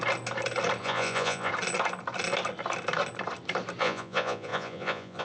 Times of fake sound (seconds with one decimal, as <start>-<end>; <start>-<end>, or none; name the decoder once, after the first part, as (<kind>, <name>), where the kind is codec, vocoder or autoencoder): 0.8-1.5 (vocoder, Vocos); 3.8-5.2